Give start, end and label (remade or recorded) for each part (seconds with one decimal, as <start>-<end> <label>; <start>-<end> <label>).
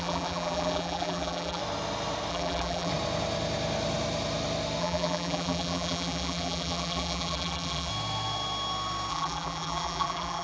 0.0-1.6 remade; 1.6-2.3 recorded; 2.3-2.9 remade; 2.9-4.8 recorded; 4.8-7.9 remade; 7.9-9.1 recorded; 9.1-10.4 remade